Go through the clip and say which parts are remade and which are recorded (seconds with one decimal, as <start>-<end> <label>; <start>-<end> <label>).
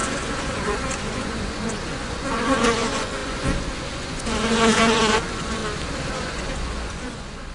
0.0-5.6 remade; 5.6-6.1 recorded; 6.1-7.5 remade